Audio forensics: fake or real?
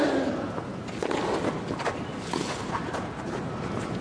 real